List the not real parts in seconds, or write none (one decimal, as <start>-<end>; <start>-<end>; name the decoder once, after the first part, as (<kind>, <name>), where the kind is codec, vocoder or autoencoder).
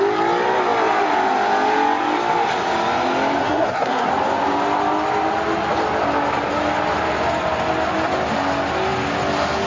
3.4-4.1 (codec, SNAC)